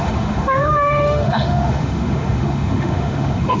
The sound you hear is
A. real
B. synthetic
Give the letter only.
B